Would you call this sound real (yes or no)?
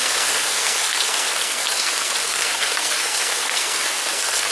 no